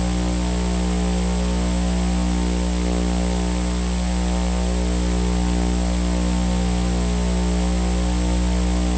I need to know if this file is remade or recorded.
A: recorded